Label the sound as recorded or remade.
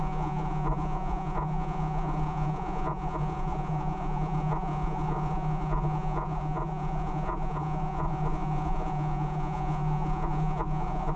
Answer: remade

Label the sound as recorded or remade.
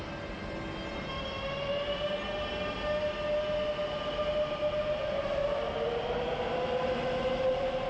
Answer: recorded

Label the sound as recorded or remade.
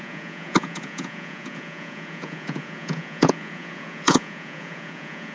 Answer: remade